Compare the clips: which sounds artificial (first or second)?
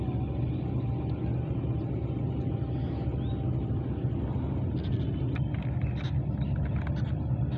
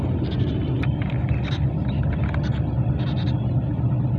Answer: second